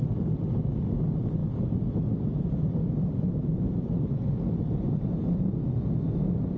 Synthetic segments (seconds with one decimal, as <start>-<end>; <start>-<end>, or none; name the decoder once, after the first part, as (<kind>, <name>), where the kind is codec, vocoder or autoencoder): none